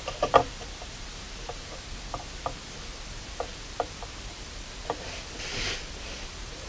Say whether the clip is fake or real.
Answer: real